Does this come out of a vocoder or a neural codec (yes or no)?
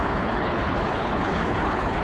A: yes